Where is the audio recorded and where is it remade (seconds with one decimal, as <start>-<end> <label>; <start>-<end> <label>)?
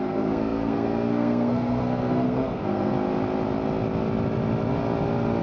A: 0.0-2.9 remade; 2.9-5.4 recorded